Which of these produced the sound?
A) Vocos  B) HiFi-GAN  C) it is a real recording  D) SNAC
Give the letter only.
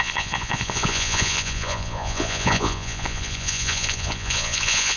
A